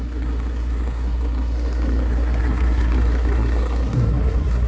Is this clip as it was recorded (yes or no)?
no